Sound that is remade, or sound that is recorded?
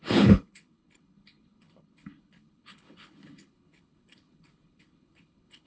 remade